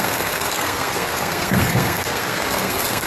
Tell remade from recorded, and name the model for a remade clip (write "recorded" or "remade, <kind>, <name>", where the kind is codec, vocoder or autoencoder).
remade, codec, SNAC